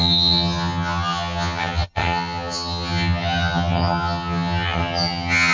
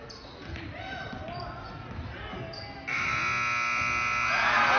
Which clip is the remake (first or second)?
first